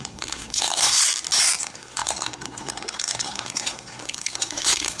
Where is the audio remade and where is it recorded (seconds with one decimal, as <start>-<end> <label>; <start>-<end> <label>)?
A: 0.0-1.0 remade; 1.0-1.6 recorded; 1.6-5.0 remade